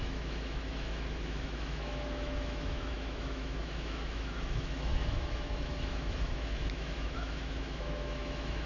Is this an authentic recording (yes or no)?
no